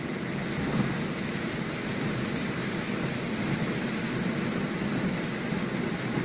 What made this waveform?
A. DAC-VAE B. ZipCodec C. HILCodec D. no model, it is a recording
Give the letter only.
D